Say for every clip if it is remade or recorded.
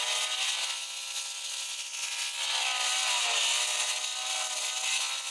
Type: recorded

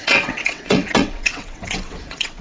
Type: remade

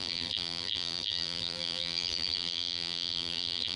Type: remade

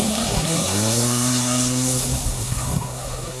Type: remade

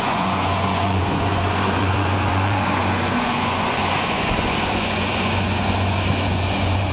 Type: remade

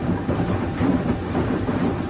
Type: remade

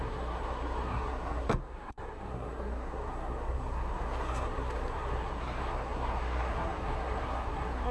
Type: remade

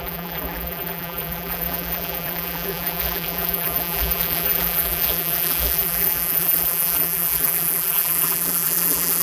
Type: remade